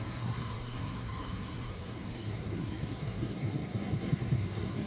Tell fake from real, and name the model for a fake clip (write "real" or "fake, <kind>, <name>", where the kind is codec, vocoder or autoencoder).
fake, codec, SNAC